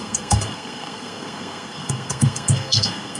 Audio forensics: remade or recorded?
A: remade